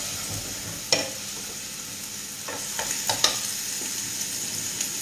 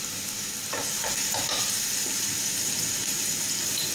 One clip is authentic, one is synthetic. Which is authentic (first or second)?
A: first